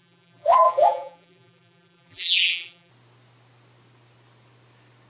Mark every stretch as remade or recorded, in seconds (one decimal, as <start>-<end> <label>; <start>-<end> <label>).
0.0-2.9 remade; 2.9-5.1 recorded